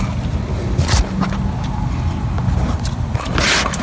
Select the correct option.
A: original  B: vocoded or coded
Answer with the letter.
A